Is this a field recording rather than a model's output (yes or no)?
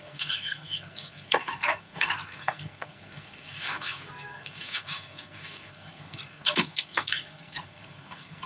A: no